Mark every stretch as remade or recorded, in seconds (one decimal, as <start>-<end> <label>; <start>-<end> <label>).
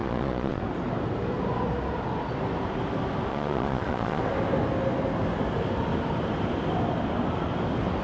0.0-0.6 remade; 0.6-3.3 recorded; 3.3-4.2 remade; 4.2-8.0 recorded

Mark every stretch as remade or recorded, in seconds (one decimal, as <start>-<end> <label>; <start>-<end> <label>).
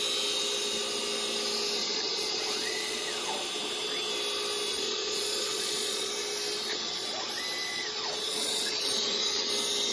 0.0-1.8 recorded; 1.8-3.0 remade; 3.0-4.7 recorded; 4.7-6.1 remade; 6.1-6.7 recorded; 6.7-7.3 remade; 7.3-7.7 recorded; 7.7-9.5 remade; 9.5-9.9 recorded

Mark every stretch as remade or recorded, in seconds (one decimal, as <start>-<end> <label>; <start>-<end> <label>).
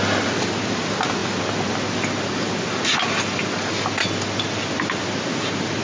0.0-5.8 recorded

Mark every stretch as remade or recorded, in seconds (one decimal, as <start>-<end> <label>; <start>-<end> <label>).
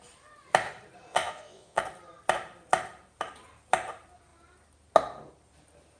0.0-1.1 recorded; 1.1-1.8 remade; 1.8-6.0 recorded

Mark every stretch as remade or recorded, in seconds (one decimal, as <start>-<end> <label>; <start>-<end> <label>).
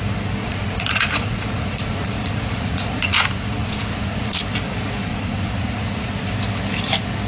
0.0-0.4 recorded; 0.4-4.4 remade; 4.4-5.1 recorded; 5.1-6.1 remade; 6.1-7.3 recorded